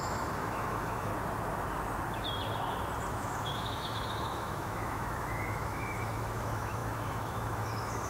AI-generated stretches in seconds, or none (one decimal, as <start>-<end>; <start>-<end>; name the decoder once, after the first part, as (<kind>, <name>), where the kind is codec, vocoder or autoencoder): 0.0-1.1 (autoencoder, DAC-VAE); 3.1-8.1